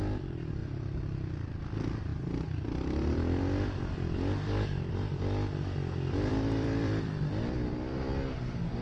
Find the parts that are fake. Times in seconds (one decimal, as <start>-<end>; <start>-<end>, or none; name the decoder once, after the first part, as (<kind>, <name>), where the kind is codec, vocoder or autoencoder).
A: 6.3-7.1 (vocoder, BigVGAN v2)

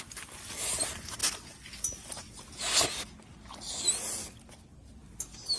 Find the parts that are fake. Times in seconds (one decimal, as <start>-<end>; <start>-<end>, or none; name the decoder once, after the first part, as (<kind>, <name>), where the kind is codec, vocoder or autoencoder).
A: none

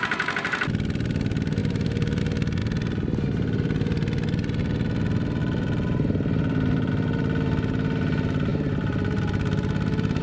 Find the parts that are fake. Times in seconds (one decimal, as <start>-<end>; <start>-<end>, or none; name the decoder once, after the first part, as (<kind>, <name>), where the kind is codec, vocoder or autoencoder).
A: 1.6-2.2 (vocoder, BigVGAN v2); 2.6-4.6; 5.4-6.9; 8.5-9.2

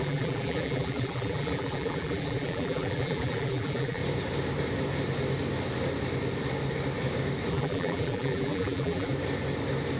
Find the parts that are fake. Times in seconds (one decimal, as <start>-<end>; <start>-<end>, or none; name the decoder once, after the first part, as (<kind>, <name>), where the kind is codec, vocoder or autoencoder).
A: 0.0-4.0 (vocoder, BigVGAN v2); 7.5-9.1

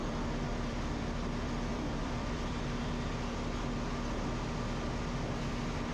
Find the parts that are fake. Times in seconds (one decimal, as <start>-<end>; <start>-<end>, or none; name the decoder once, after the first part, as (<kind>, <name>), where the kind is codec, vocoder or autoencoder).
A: 0.0-2.6 (vocoder, BigVGAN v2)

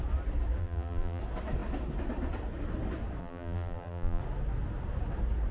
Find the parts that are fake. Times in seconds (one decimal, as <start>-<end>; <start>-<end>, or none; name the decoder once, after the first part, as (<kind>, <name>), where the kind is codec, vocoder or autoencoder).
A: 0.6-1.2 (vocoder, BigVGAN v2); 3.2-4.2

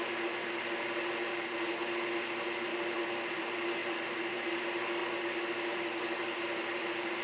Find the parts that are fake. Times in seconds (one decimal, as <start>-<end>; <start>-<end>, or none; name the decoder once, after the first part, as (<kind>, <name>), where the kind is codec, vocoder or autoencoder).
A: 2.7-3.4 (vocoder, BigVGAN v2); 3.8-4.5